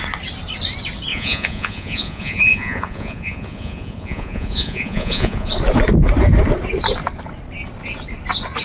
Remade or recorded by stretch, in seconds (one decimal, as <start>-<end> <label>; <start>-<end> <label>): 0.0-1.1 recorded; 1.1-5.5 remade; 5.5-8.6 recorded